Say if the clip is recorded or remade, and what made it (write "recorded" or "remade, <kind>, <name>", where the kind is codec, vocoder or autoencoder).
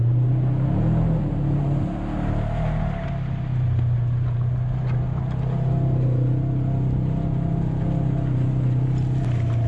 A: recorded